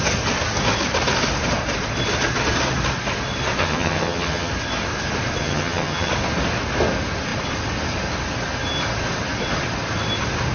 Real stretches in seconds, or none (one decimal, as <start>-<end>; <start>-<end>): 0.0-3.6; 4.5-5.4; 6.1-10.5